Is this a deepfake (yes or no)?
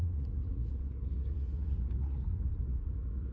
yes